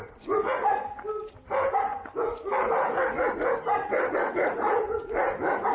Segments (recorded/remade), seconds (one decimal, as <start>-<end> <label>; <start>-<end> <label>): 0.0-5.7 recorded